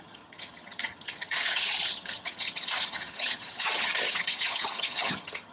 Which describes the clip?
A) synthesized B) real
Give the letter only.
A